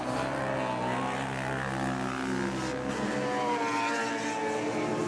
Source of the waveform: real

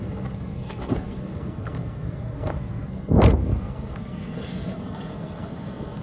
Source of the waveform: fake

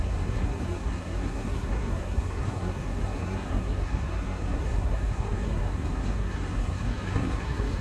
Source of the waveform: fake